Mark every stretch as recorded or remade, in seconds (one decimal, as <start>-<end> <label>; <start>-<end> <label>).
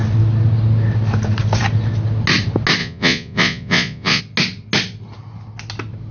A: 0.0-2.8 recorded; 2.8-4.2 remade; 4.2-6.1 recorded